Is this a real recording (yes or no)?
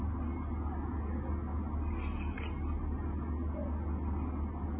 yes